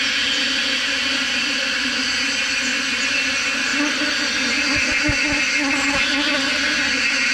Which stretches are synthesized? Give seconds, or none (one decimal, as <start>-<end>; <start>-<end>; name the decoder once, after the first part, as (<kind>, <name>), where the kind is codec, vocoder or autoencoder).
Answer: none